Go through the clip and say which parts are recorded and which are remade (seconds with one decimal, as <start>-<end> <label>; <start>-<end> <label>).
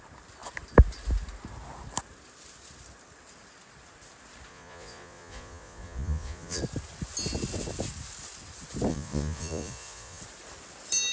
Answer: 0.0-4.5 recorded; 4.5-6.6 remade; 6.6-8.9 recorded; 8.9-10.2 remade; 10.2-11.1 recorded